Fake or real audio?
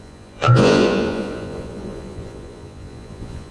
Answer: fake